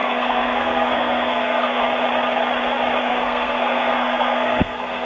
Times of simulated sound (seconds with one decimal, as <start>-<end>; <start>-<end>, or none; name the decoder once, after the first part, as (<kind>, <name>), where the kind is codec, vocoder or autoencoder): 0.0-1.8 (codec, SNAC); 3.0-5.0